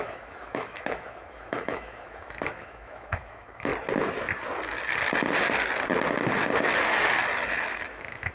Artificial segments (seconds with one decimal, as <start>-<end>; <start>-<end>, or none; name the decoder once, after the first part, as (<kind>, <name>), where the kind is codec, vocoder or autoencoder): 0.0-3.7 (autoencoder, DAC-VAE); 7.7-8.3